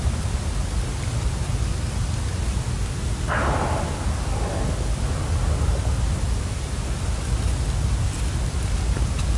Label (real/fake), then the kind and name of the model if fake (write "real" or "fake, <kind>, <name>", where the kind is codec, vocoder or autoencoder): real